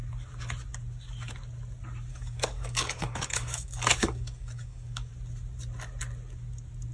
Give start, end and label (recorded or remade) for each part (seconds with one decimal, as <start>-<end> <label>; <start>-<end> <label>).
0.0-2.1 recorded; 2.1-5.1 remade; 5.1-6.9 recorded